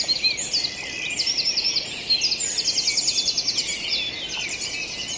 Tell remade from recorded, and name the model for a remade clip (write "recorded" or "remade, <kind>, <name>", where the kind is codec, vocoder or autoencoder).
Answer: recorded